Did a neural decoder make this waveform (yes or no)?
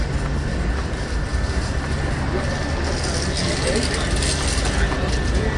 no